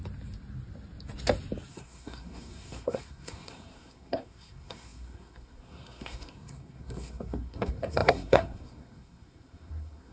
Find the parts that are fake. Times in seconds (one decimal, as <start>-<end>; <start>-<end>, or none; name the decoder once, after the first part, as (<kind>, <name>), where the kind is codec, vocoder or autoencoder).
1.7-10.1 (codec, SNAC)